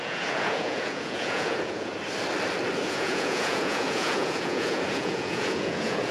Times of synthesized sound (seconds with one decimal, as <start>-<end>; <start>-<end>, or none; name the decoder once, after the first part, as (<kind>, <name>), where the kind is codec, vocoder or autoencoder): 0.0-1.9 (vocoder, Vocos); 2.9-6.1